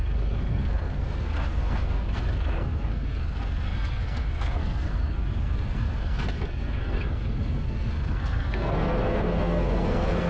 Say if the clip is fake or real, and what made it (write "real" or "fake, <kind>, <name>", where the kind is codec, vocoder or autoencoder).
fake, codec, SNAC